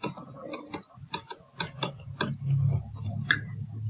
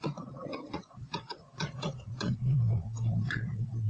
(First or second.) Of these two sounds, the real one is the first